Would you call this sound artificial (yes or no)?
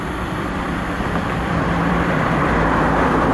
yes